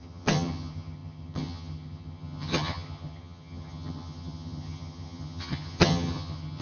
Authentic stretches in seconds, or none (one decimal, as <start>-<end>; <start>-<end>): none